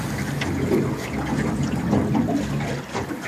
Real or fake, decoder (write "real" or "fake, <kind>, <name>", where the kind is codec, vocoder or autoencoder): real